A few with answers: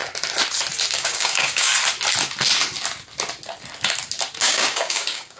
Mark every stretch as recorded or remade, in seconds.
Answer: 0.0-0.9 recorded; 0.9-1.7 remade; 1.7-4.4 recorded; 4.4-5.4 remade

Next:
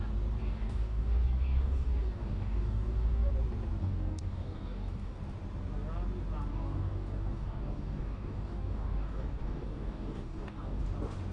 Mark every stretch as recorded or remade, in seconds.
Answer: 0.0-0.4 recorded; 0.4-3.3 remade; 3.3-3.8 recorded; 3.8-5.2 remade; 5.2-6.5 recorded; 6.5-10.8 remade; 10.8-11.3 recorded